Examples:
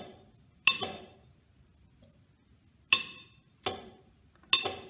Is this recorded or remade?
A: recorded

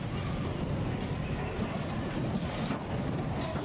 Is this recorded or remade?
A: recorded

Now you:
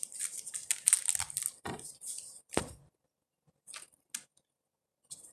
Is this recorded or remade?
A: recorded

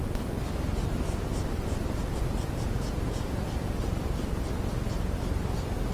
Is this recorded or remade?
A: recorded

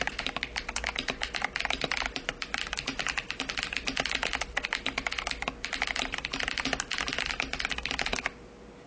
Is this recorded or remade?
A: recorded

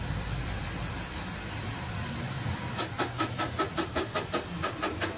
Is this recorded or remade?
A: remade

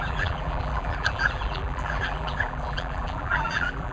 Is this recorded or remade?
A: remade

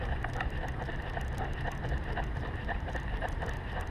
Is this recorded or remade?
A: remade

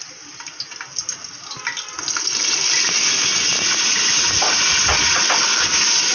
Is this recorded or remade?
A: recorded